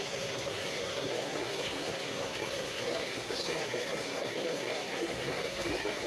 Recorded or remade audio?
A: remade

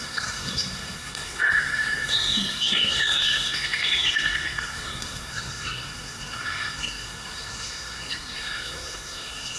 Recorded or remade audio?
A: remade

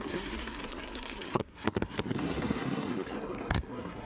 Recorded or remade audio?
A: remade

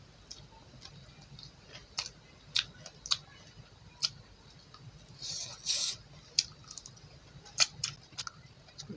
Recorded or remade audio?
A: recorded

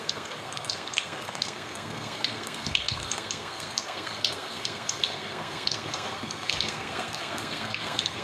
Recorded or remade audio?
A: remade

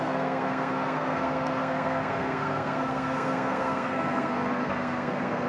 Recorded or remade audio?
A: remade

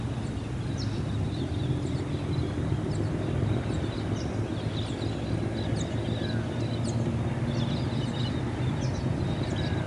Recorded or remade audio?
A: recorded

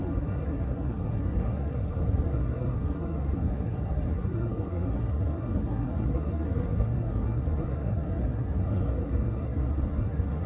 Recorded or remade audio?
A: remade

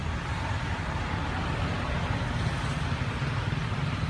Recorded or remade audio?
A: recorded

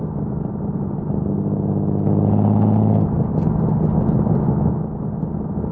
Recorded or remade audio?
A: recorded